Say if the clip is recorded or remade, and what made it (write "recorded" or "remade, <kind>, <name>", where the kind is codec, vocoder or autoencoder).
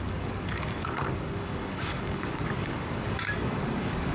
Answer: remade, codec, DAC